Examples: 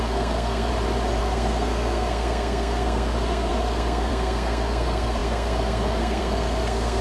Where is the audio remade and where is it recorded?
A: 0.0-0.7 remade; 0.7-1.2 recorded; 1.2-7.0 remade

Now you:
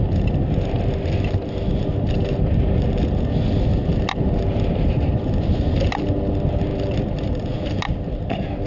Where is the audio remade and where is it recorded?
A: 0.0-8.7 recorded

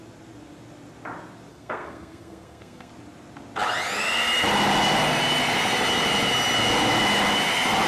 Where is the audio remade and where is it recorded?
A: 0.0-1.5 recorded; 1.5-2.9 remade; 2.9-7.9 recorded

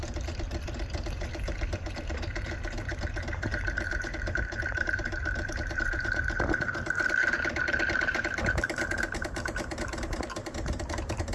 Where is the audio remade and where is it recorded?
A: 0.0-11.3 remade

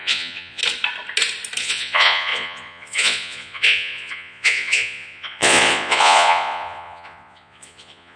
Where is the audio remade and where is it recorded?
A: 0.0-0.6 remade; 0.6-1.6 recorded; 1.6-8.2 remade

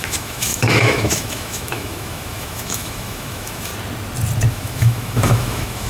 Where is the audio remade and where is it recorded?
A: 0.0-3.7 remade; 3.7-4.5 recorded; 4.5-5.9 remade